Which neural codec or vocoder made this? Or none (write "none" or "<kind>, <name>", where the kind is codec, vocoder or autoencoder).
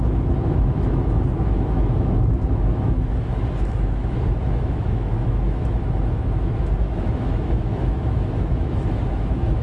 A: autoencoder, DAC-VAE